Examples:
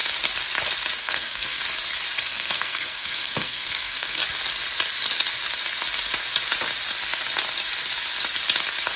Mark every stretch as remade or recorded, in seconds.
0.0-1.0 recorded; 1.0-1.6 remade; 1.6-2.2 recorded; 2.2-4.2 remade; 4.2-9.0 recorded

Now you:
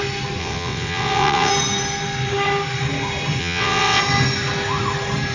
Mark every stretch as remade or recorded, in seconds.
0.0-0.4 recorded; 0.4-1.5 remade; 1.5-3.4 recorded; 3.4-4.0 remade; 4.0-5.3 recorded